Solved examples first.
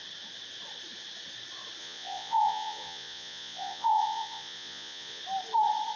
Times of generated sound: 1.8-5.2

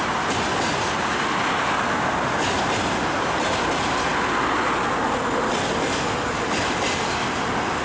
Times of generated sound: none

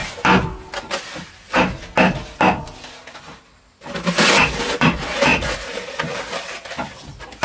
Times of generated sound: 5.3-6.0

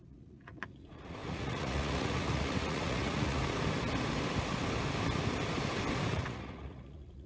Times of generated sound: 0.0-3.4; 6.1-7.3

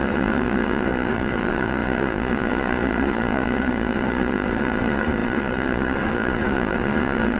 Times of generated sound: 0.0-7.4

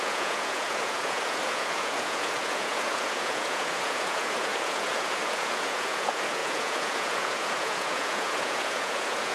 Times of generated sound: 0.0-9.3

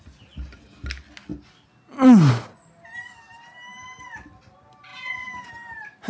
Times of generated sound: 4.9-5.5